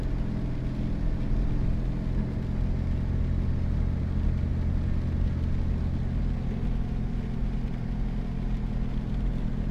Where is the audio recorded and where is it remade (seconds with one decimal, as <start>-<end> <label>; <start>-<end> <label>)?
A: 0.0-9.7 recorded